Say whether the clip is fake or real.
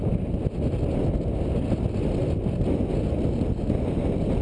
real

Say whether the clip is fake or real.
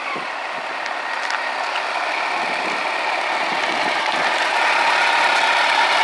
real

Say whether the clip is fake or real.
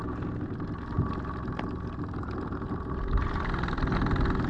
real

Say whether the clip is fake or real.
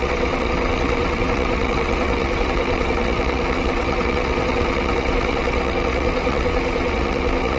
fake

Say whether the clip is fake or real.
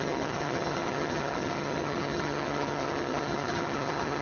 fake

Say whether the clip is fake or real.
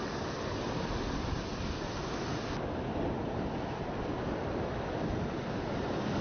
real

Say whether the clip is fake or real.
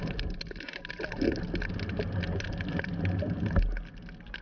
real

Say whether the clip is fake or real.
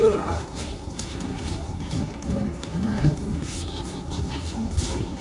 fake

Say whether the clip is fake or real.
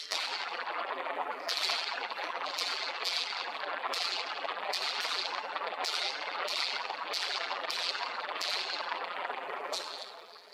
fake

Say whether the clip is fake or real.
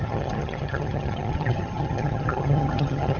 fake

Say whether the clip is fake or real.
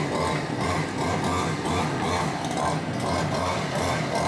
real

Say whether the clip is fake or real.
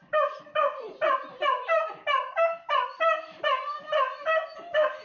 real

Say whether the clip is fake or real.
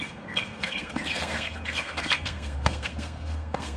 fake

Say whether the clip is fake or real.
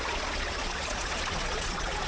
fake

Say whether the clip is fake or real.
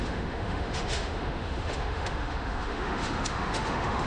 fake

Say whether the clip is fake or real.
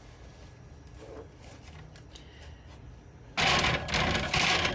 real